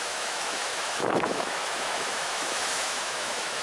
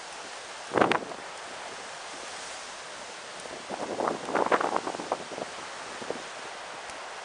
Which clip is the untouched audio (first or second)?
second